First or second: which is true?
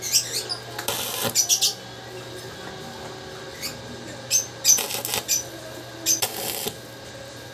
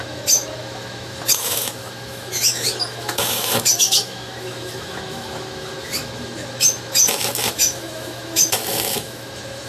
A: first